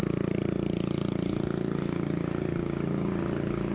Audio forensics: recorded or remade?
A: recorded